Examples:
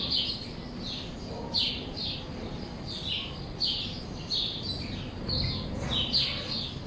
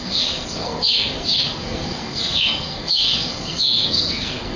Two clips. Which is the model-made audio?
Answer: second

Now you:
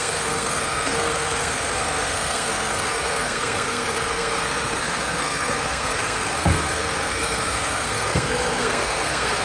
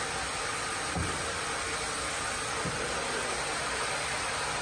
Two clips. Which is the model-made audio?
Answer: first